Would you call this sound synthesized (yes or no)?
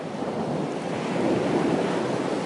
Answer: no